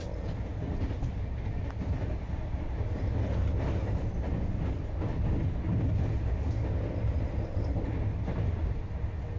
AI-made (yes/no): no